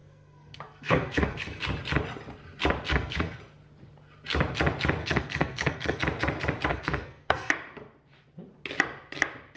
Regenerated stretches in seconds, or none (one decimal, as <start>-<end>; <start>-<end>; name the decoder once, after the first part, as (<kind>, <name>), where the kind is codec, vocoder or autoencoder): 0.0-1.6 (codec, SNAC); 2.9-3.4; 5.0-6.0; 6.7-7.5